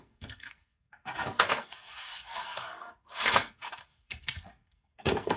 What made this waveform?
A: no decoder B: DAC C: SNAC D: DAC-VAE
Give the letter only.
C